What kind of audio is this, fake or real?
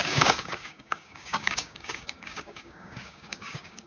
fake